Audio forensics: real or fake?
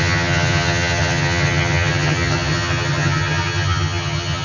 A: fake